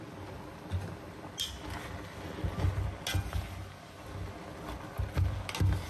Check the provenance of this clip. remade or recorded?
recorded